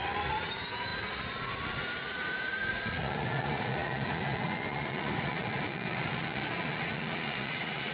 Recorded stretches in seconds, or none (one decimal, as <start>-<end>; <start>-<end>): none